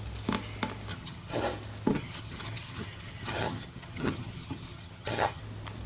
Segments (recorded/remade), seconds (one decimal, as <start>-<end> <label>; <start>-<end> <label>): 0.0-0.9 recorded; 0.9-1.4 remade; 1.4-1.9 recorded; 1.9-5.4 remade; 5.4-5.9 recorded